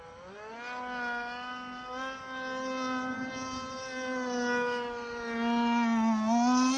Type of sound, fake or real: real